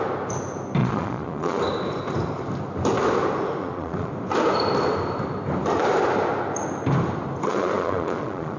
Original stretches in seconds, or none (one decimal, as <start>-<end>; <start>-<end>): 0.0-0.8; 1.6-3.6; 4.1-7.5